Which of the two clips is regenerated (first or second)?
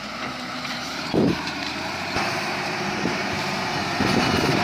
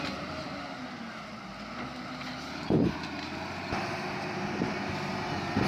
first